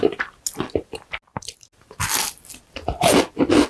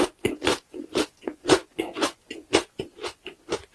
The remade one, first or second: second